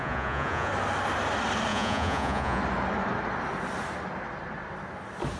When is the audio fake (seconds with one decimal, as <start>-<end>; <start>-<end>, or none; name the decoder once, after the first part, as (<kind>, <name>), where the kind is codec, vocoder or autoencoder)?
0.0-0.7 (vocoder, Vocos); 1.7-2.6